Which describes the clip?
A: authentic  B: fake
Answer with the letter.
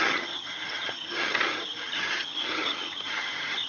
B